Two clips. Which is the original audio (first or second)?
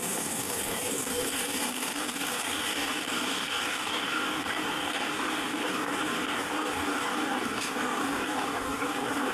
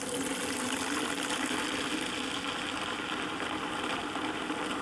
second